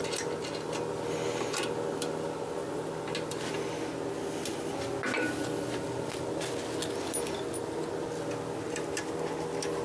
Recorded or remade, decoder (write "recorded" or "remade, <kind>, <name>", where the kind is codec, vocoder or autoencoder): recorded